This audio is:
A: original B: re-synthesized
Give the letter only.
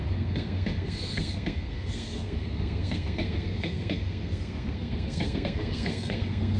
B